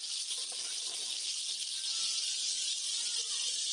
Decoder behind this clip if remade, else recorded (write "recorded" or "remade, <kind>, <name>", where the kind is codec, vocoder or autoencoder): recorded